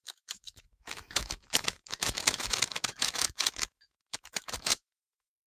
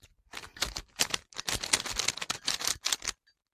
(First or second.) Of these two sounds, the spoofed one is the first